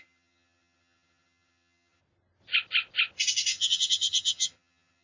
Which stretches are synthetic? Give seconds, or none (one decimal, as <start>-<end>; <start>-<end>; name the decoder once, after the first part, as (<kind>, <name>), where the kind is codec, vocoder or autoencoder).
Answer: 0.0-2.0 (vocoder, HiFi-GAN); 3.5-5.0